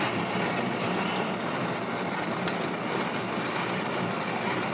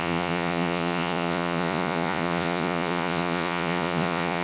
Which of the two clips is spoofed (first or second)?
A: second